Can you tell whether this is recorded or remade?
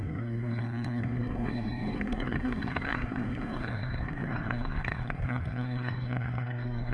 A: remade